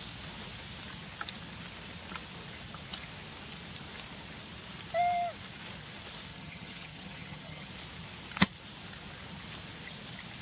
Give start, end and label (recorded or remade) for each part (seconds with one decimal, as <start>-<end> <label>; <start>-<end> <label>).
0.0-6.3 recorded; 6.3-7.7 remade; 7.7-10.4 recorded